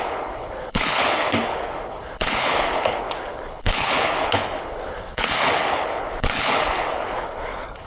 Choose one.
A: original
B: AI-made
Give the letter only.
B